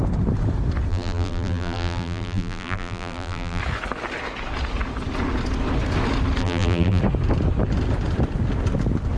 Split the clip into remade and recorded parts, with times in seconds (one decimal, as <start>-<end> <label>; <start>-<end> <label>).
0.0-0.9 recorded; 0.9-3.6 remade; 3.6-6.4 recorded; 6.4-7.0 remade; 7.0-9.2 recorded